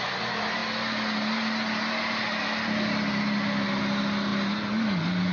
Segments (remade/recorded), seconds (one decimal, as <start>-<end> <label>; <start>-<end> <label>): 0.0-5.3 recorded

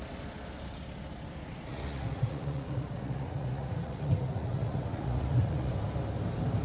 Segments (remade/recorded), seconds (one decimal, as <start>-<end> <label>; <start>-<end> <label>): 0.0-1.7 recorded; 1.7-5.7 remade; 5.7-6.6 recorded

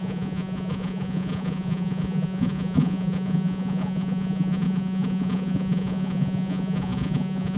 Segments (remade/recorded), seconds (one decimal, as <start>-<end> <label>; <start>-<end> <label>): 0.0-7.6 remade

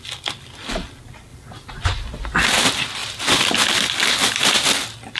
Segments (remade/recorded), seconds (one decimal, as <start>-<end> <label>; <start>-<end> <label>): 0.0-5.2 recorded

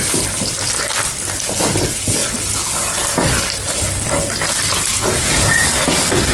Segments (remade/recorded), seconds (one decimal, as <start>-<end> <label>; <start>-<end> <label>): 0.0-4.9 recorded; 4.9-5.7 remade; 5.7-6.3 recorded

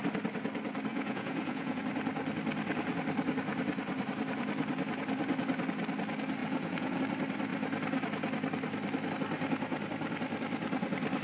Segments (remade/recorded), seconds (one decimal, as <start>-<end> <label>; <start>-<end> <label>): 0.0-0.9 recorded; 0.9-1.8 remade; 1.8-6.4 recorded; 6.4-7.0 remade; 7.0-11.2 recorded